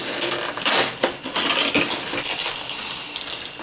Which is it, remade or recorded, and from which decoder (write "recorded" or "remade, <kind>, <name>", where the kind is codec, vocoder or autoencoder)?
recorded